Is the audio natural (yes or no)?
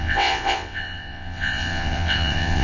no